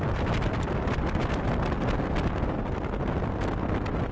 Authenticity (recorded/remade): recorded